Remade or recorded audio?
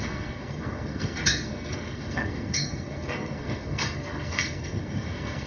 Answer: remade